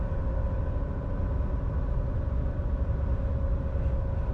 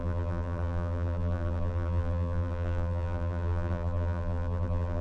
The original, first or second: first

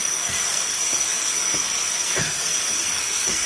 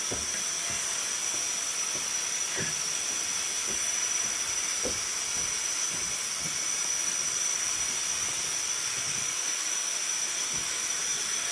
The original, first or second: second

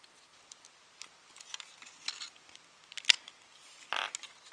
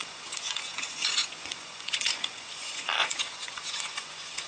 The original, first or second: first